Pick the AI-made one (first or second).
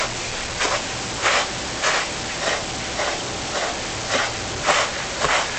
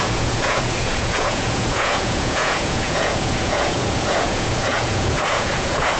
second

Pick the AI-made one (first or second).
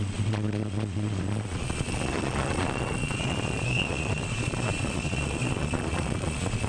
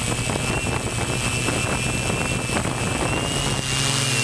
first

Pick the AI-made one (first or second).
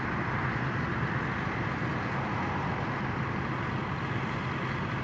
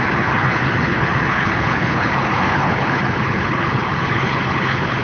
second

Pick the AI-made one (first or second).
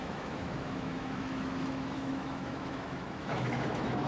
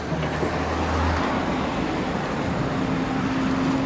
first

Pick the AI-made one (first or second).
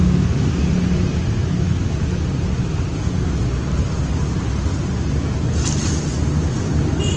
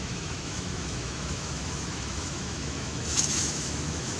second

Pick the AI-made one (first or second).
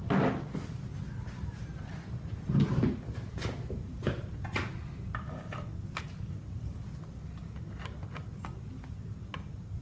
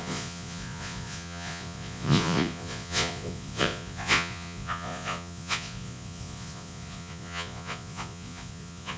second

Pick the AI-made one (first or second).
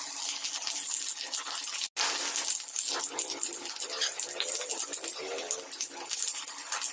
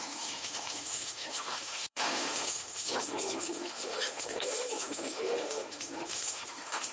second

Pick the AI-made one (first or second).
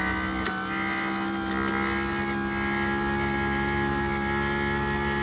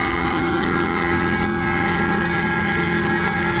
second